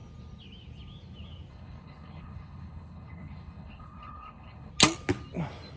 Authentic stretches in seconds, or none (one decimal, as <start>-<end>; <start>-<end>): 0.0-1.5; 4.7-5.8